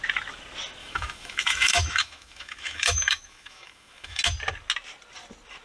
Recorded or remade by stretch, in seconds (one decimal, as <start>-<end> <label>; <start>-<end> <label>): 0.0-0.8 recorded; 0.8-4.2 remade; 4.2-5.6 recorded